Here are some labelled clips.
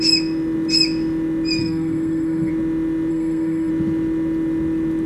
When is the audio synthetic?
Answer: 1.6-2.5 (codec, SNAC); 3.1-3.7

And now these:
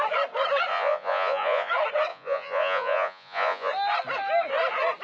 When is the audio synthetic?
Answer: 0.7-1.7 (vocoder, Vocos); 2.1-3.7

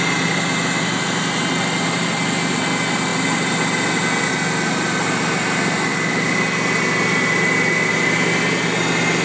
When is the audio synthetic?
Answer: none

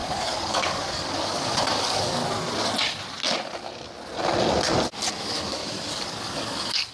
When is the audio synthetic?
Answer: 0.0-2.2 (codec, DAC); 5.1-6.9

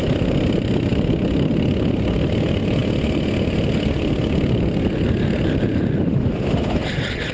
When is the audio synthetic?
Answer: none

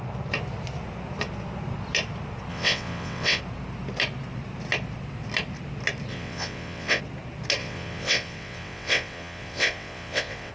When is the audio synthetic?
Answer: 2.5-3.4 (vocoder, WaveNeXt); 6.1-7.0; 7.6-10.5